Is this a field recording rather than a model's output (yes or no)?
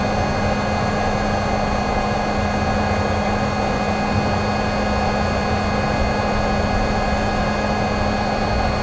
yes